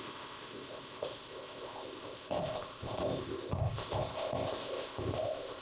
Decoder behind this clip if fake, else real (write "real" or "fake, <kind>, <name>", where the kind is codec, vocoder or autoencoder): fake, codec, ZipCodec